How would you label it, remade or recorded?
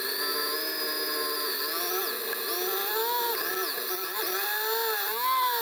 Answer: recorded